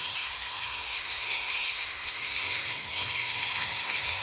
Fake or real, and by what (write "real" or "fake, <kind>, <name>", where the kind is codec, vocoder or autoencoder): fake, codec, SNAC